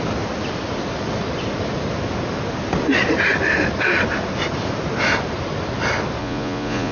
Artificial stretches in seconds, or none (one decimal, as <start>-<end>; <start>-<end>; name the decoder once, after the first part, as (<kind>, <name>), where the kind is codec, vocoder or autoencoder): 6.2-6.9 (vocoder, Vocos)